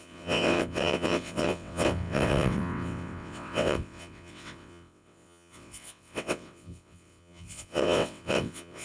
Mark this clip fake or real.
fake